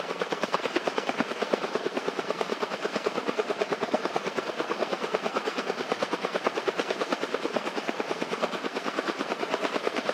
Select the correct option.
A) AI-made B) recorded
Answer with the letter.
A